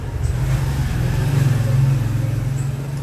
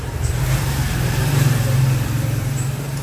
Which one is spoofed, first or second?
second